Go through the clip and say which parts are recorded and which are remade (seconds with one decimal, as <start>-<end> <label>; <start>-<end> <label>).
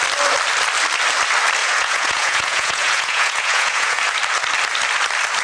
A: 0.0-1.6 recorded; 1.6-4.0 remade; 4.0-5.4 recorded